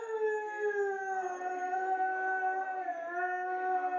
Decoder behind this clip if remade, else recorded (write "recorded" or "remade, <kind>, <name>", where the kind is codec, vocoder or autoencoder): recorded